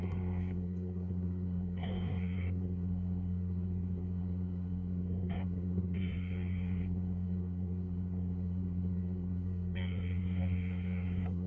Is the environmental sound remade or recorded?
remade